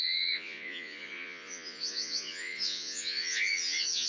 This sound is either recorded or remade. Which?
remade